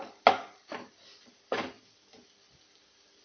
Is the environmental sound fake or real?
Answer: real